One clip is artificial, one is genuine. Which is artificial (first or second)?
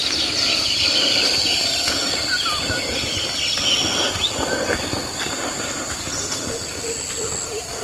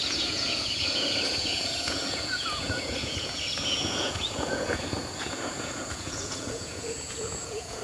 second